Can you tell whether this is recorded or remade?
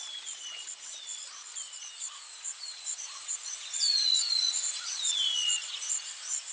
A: remade